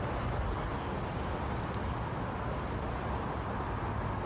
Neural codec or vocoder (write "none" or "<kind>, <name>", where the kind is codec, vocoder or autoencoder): vocoder, BigVGAN v2